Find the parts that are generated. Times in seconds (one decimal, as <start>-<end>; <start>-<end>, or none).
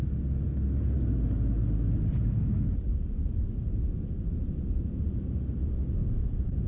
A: 1.6-5.6; 6.0-6.7